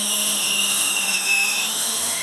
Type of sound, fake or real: fake